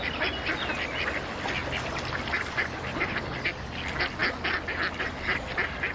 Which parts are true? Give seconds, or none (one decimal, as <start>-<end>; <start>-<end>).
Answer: 0.0-5.9